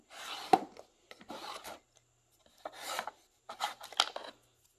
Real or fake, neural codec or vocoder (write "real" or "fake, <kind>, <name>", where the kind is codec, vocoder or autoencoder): real